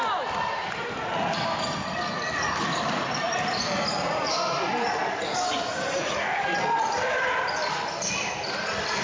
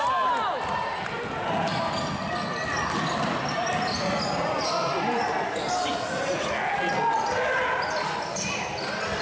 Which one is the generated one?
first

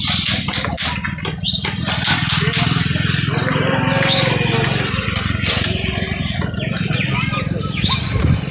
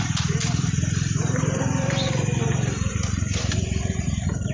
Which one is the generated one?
second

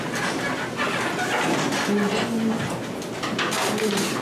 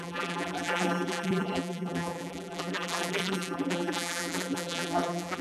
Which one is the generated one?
second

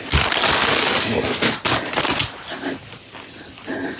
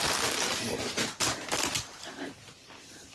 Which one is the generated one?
second